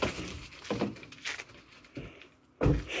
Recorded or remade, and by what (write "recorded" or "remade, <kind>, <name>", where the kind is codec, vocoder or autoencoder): recorded